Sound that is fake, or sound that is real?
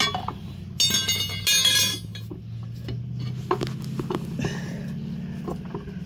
real